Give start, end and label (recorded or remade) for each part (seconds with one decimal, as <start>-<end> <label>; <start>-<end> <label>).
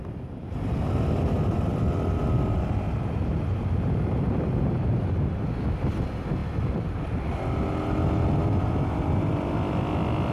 0.0-6.4 recorded; 6.4-7.4 remade; 7.4-10.3 recorded